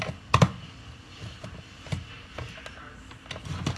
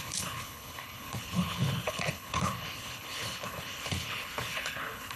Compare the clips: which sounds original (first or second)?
first